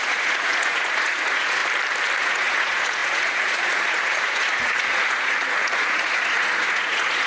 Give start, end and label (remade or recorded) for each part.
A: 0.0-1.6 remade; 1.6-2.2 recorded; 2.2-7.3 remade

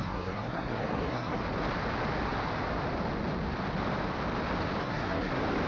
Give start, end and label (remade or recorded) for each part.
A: 0.0-1.4 remade; 1.4-4.8 recorded; 4.8-5.3 remade; 5.3-5.7 recorded

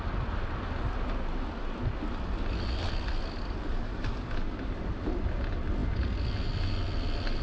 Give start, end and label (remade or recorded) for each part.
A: 0.0-7.4 recorded

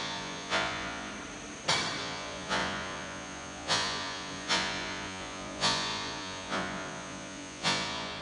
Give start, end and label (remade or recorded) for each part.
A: 0.0-1.1 remade; 1.1-2.0 recorded; 2.0-8.2 remade